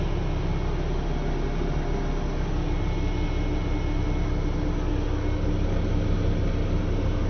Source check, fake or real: real